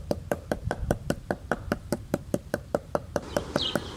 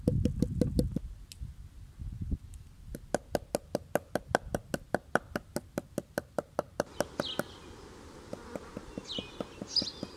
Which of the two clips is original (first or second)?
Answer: second